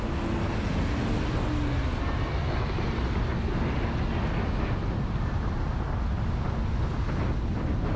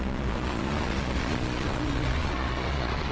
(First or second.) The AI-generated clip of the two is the second